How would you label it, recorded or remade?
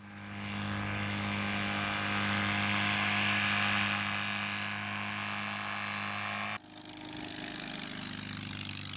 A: recorded